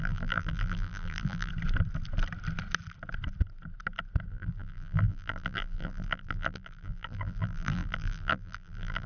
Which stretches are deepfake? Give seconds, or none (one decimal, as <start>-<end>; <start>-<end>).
0.0-1.5; 4.3-9.1